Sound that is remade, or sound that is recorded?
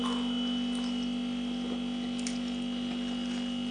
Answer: recorded